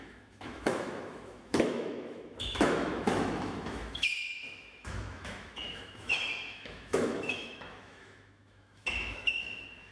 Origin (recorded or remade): remade